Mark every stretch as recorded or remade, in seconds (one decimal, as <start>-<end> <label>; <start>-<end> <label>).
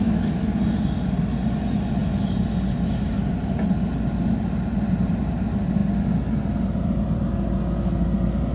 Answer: 0.0-8.5 recorded